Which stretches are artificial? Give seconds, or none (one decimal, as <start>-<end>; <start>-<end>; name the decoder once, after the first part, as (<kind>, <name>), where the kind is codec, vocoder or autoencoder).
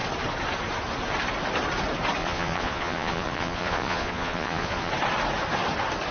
2.2-4.9 (vocoder, Vocos)